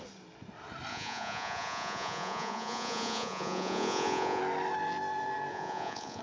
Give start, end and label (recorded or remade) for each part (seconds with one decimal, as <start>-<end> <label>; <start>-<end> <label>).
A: 0.0-0.9 recorded; 0.9-4.4 remade; 4.4-5.5 recorded; 5.5-6.2 remade